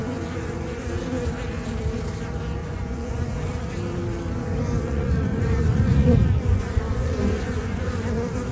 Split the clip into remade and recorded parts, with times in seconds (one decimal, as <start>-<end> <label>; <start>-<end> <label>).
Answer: 0.0-1.0 remade; 1.0-2.6 recorded; 2.6-3.3 remade; 3.3-4.8 recorded; 4.8-7.9 remade; 7.9-8.5 recorded